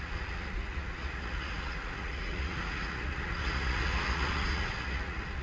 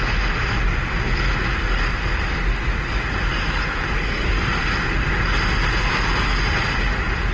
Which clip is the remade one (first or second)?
first